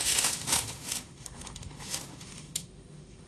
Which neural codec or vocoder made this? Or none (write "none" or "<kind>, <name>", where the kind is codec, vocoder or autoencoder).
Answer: autoencoder, DAC-VAE